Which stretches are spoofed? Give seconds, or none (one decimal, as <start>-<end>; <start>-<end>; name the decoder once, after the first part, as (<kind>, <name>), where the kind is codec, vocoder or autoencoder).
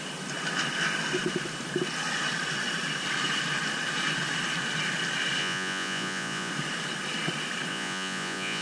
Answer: 5.4-6.5 (vocoder, Vocos); 7.7-8.6